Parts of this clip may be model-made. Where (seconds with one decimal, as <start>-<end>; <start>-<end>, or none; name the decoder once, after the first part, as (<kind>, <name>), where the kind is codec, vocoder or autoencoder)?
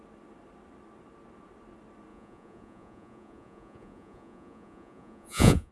2.1-5.7 (vocoder, Vocos)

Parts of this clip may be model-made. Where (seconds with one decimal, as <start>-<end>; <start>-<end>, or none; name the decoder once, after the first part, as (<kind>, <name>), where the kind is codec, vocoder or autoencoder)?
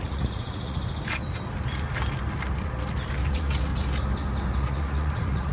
0.0-0.8 (vocoder, Vocos); 3.3-3.7; 4.5-5.5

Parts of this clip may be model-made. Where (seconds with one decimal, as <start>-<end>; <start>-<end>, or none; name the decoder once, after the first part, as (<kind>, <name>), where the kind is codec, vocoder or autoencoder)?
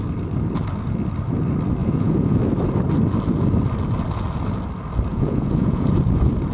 1.8-2.4 (vocoder, Vocos); 5.1-5.9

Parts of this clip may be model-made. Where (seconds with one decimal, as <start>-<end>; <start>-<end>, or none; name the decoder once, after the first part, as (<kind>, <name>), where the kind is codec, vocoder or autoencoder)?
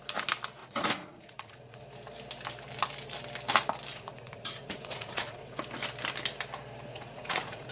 0.6-1.8 (vocoder, Vocos); 3.9-5.6; 6.9-7.7